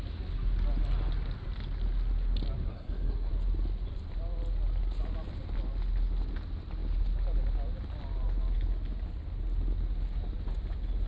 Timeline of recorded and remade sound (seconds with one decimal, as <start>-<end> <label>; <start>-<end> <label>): 0.0-2.7 recorded; 2.7-3.3 remade; 3.3-11.1 recorded